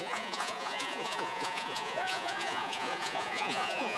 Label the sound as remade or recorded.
remade